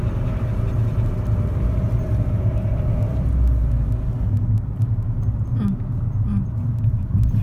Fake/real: real